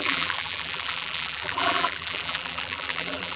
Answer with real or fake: fake